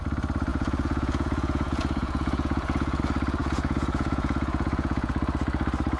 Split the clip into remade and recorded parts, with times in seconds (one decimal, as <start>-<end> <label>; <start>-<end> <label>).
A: 0.0-0.5 recorded; 0.5-3.0 remade; 3.0-3.4 recorded; 3.4-5.1 remade; 5.1-6.0 recorded